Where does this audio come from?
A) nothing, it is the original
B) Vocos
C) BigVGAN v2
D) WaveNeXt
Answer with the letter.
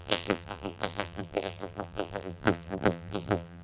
C